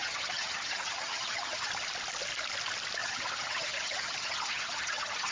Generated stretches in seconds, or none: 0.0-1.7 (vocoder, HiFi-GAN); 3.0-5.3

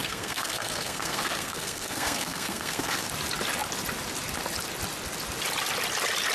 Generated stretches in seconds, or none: 0.0-3.1 (codec, SNAC)

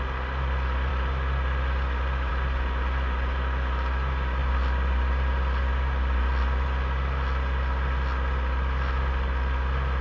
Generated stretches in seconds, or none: none

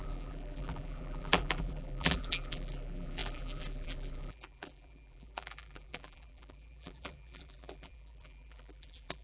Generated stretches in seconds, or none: 0.0-9.2 (vocoder, BigVGAN v2)

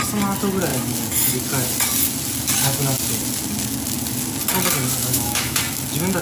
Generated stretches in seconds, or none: 5.0-5.6 (autoencoder, DAC-VAE)

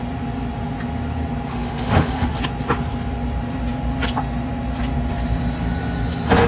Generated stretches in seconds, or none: 1.5-2.4 (autoencoder, DAC-VAE)

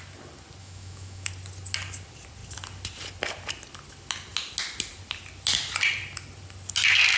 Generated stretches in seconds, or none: 0.6-1.3 (autoencoder, DAC-VAE)